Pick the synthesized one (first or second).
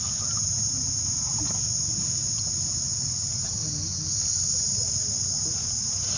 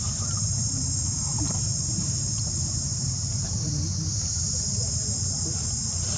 second